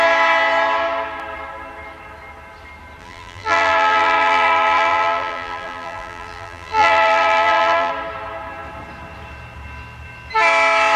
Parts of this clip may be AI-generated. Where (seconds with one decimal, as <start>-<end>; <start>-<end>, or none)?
3.0-7.9